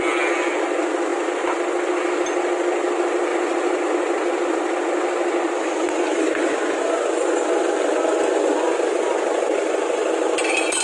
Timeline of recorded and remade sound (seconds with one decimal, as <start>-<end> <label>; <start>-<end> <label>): 0.0-3.3 recorded; 3.3-3.8 remade; 3.8-10.8 recorded